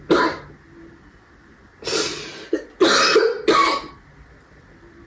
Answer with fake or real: real